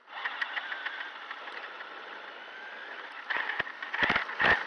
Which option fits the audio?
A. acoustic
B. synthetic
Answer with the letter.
A